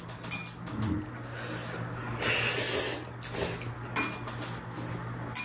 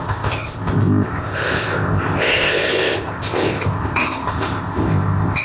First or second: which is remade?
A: second